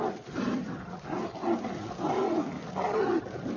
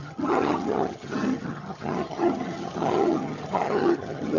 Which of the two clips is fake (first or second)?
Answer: second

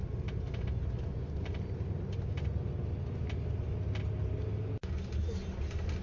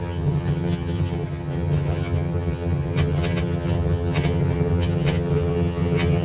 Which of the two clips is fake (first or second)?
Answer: second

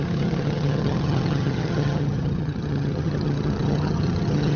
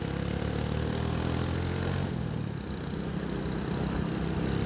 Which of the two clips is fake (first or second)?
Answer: first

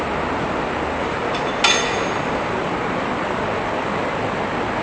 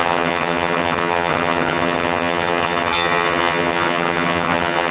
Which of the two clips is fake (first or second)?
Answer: second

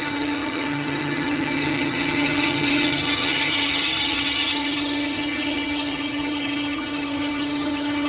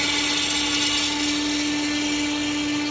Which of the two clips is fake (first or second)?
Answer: first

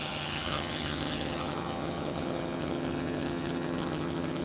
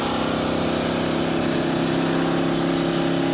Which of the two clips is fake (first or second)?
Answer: first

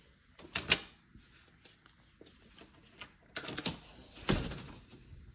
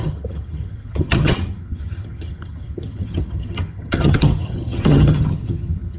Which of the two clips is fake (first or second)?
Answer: second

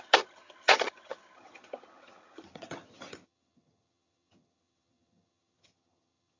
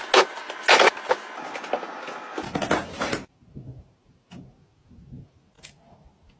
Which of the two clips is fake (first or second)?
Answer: first